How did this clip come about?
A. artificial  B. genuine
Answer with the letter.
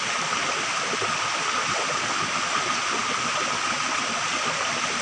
B